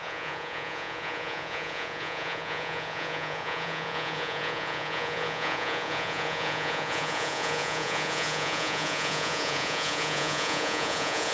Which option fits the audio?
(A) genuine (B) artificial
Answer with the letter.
B